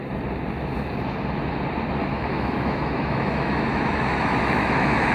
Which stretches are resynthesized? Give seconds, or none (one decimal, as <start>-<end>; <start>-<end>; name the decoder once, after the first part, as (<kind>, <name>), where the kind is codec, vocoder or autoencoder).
2.0-5.1 (autoencoder, DAC-VAE)